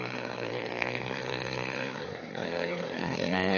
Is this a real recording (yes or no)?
no